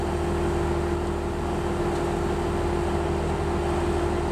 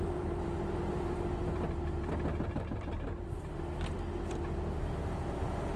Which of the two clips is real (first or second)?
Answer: first